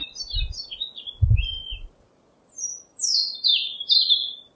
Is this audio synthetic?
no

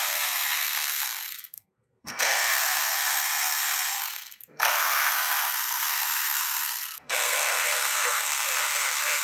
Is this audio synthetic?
yes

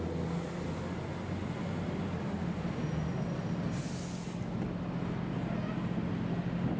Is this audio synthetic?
no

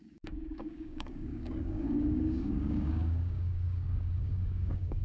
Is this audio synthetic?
yes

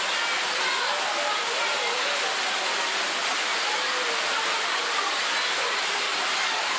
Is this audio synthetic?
no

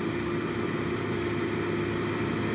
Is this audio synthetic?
no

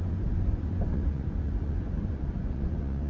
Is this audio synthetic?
yes